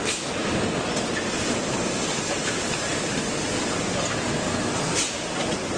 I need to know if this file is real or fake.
real